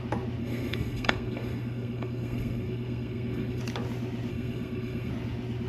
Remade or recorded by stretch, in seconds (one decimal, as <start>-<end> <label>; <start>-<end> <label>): 0.0-0.4 recorded; 0.4-3.6 remade; 3.6-4.3 recorded; 4.3-5.1 remade; 5.1-5.7 recorded